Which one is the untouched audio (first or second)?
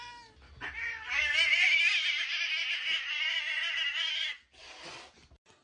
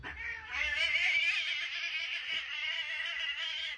first